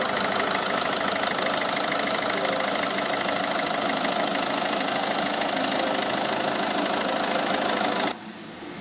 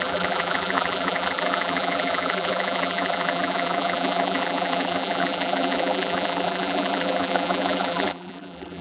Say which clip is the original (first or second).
first